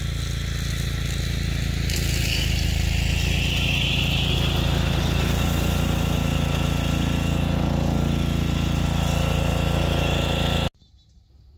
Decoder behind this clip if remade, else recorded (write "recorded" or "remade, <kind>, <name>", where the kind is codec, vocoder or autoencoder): recorded